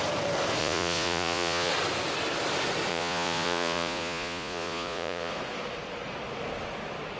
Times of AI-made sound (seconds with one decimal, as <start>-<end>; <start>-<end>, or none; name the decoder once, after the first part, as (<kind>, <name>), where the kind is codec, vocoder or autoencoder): 0.6-1.7 (vocoder, Vocos); 2.9-5.3